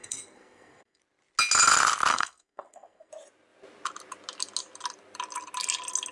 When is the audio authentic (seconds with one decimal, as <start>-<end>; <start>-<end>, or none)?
1.0-2.1; 3.1-6.1